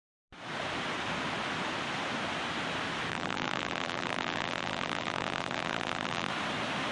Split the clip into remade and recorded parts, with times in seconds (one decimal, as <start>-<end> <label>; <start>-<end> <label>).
0.0-3.1 recorded; 3.1-6.3 remade; 6.3-6.9 recorded